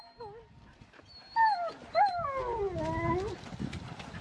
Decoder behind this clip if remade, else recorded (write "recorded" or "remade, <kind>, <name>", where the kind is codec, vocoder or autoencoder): recorded